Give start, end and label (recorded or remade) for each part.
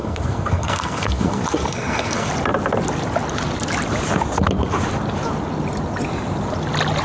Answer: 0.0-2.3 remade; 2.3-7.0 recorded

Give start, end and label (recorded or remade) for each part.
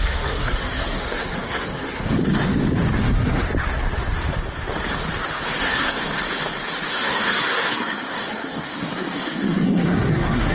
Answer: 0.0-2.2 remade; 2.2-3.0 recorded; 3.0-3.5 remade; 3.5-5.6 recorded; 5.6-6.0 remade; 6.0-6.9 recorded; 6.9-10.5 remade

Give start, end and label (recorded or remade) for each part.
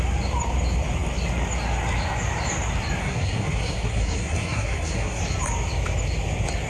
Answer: 0.0-3.0 recorded; 3.0-5.2 remade; 5.2-6.7 recorded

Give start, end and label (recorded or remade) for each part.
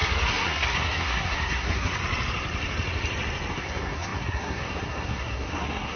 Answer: 0.0-2.0 remade; 2.0-3.5 recorded; 3.5-6.0 remade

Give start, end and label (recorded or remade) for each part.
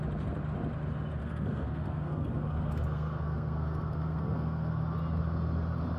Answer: 0.0-1.2 recorded; 1.2-4.8 remade; 4.8-6.0 recorded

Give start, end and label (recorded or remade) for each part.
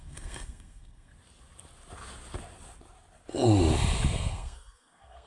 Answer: 0.0-1.1 remade; 1.1-4.3 recorded; 4.3-5.3 remade